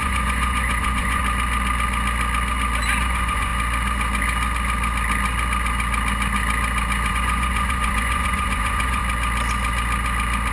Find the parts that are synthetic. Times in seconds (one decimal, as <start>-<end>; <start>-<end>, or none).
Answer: 0.0-1.2; 3.0-3.5; 7.1-9.0